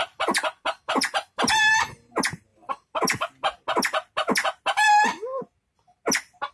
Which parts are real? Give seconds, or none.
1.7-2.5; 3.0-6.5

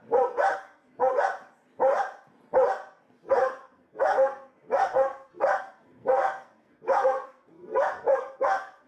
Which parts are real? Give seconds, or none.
0.0-0.5; 1.1-3.4

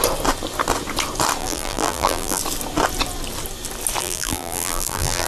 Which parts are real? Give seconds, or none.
0.0-1.4; 2.4-4.0

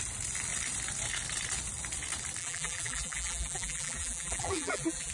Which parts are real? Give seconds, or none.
0.0-2.4

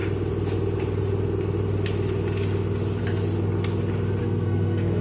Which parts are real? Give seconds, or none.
0.0-4.2

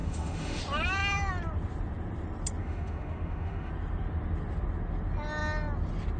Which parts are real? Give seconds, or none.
0.6-2.6; 3.7-6.2

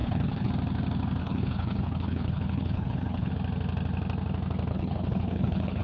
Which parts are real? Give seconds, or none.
0.5-1.2; 3.3-4.7